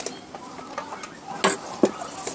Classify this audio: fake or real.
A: real